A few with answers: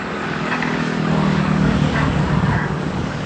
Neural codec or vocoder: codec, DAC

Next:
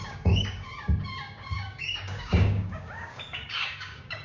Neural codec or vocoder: codec, DAC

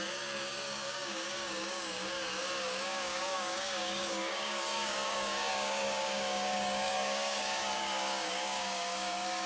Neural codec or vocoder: codec, DAC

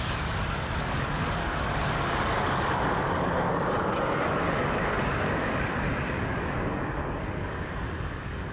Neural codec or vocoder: codec, DAC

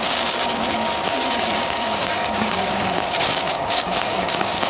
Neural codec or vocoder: codec, DAC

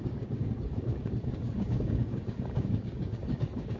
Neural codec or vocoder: codec, DAC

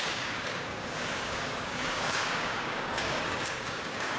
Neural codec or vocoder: codec, DAC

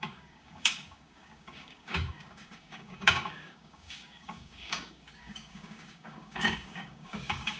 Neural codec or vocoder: codec, DAC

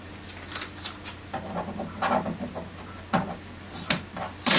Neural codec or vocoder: none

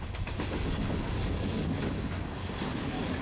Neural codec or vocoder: codec, DAC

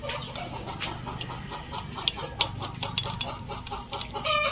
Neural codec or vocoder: none